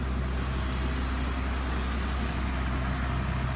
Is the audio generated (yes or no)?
no